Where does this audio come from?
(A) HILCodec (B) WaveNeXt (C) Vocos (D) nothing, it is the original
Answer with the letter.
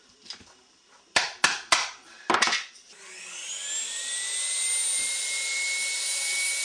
D